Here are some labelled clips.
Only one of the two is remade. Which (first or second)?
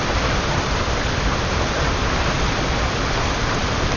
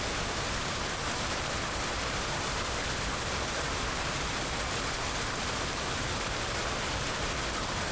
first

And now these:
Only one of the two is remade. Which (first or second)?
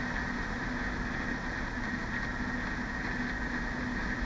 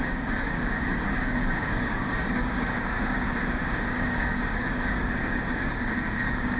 second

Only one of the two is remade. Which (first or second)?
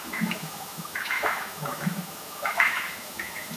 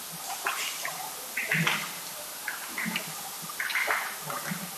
first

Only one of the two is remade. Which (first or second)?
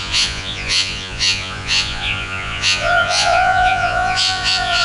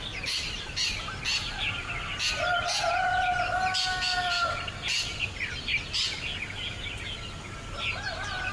first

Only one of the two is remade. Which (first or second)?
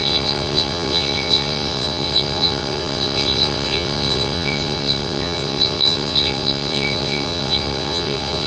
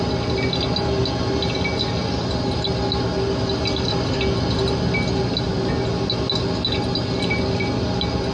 first